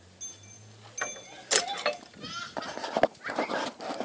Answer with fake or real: real